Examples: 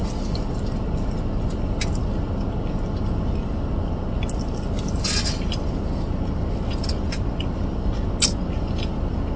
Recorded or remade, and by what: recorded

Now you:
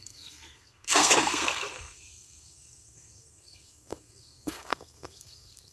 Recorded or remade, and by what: remade, codec, SNAC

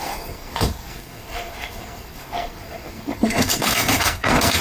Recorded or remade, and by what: remade, codec, SNAC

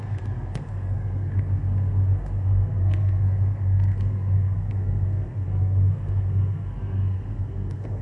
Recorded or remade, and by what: remade, codec, SNAC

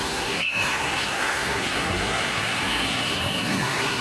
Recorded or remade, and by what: remade, codec, SNAC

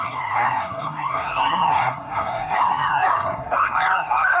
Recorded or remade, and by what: remade, codec, SNAC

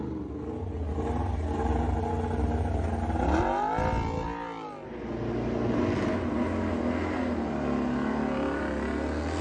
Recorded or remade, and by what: recorded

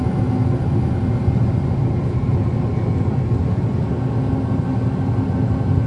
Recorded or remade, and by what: recorded